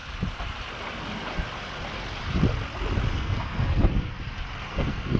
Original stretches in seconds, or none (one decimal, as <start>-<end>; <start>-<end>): 0.0-3.1; 4.1-4.7